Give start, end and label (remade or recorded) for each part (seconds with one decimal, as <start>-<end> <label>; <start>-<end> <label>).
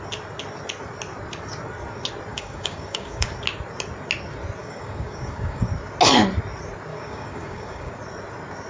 0.0-2.3 recorded; 2.3-3.3 remade; 3.3-4.6 recorded; 4.6-5.7 remade; 5.7-6.9 recorded; 6.9-7.9 remade; 7.9-8.7 recorded